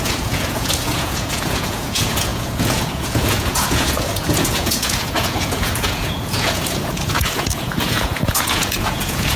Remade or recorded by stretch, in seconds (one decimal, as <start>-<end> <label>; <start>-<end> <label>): 0.0-9.4 remade